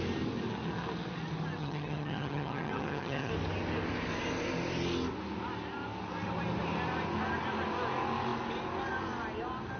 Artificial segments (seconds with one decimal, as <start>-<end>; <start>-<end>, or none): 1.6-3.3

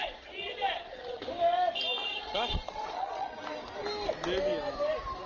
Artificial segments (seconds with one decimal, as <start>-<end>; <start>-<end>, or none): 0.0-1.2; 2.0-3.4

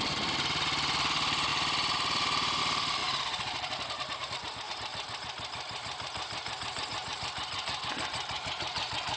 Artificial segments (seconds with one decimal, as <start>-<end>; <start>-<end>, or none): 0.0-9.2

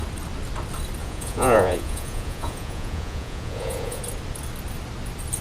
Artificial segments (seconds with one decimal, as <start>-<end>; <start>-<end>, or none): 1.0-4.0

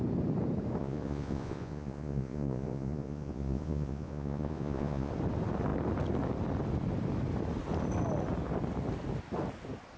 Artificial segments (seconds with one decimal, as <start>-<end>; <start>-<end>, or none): 0.8-5.1

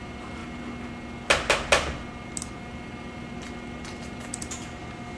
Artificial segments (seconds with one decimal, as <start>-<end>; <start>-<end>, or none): none